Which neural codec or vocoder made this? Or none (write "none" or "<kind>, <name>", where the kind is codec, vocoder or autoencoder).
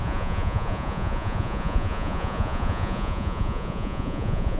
vocoder, Vocos